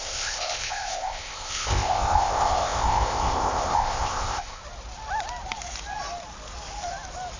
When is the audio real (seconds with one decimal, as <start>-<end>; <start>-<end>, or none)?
4.6-7.4

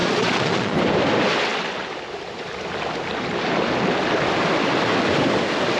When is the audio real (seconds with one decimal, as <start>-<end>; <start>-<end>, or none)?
0.8-5.8

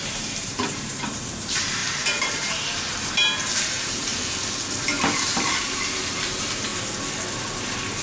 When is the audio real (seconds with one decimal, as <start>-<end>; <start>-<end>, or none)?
4.1-4.7; 6.7-8.0

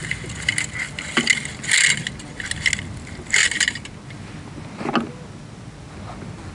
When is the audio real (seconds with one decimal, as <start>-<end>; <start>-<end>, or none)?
0.0-6.5

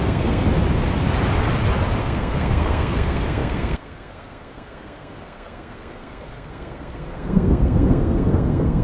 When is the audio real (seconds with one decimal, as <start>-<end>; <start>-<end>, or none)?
0.4-2.0